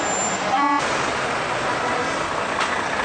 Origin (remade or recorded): recorded